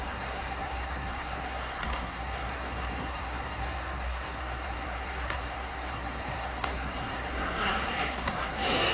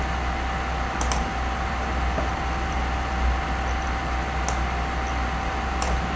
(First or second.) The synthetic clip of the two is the first